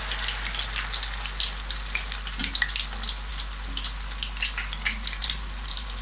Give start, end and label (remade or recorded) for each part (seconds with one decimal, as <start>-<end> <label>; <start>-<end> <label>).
0.0-5.2 recorded; 5.2-6.0 remade